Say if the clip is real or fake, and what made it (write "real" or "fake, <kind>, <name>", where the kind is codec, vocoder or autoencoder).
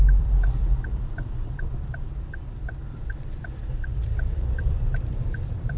fake, vocoder, BigVGAN v2